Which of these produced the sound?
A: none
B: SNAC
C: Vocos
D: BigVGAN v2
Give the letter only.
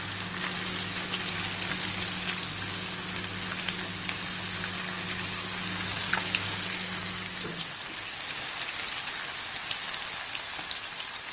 A